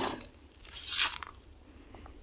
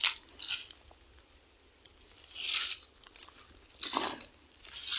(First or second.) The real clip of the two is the second